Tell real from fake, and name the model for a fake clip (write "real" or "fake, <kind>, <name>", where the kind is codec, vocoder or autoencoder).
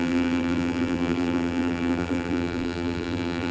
fake, vocoder, BigVGAN v2